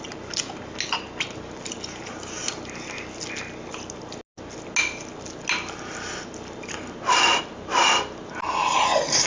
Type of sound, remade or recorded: recorded